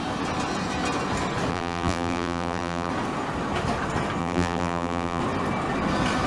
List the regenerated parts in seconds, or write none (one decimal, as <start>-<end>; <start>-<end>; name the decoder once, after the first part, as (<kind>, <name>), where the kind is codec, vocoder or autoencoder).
1.5-2.9 (vocoder, BigVGAN v2); 4.2-5.2